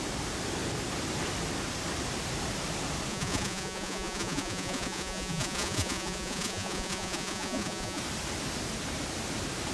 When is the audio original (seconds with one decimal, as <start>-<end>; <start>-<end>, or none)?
0.0-3.1; 8.0-9.7